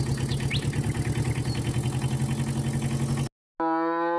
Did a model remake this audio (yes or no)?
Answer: no